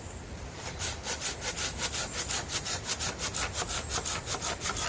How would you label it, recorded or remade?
recorded